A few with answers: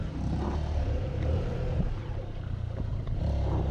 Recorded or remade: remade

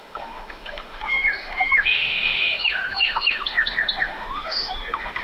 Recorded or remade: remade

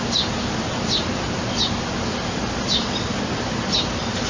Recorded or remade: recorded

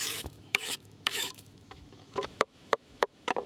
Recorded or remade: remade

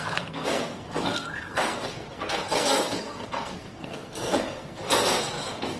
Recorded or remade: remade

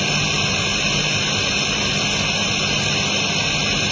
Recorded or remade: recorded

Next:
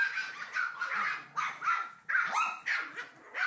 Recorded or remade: recorded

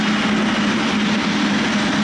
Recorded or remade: recorded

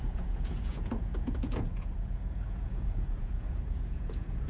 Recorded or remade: remade